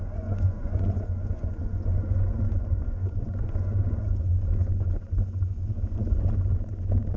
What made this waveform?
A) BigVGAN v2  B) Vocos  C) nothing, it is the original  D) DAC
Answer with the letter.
B